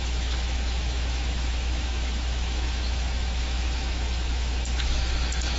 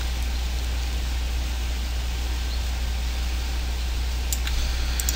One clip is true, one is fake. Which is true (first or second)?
second